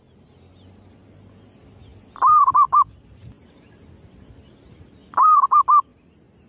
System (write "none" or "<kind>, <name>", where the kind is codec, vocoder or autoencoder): none